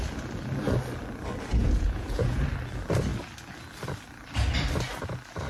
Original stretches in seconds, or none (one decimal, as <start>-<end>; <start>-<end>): 0.0-1.6; 2.4-5.5